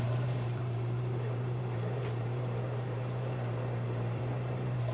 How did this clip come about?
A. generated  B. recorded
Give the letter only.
A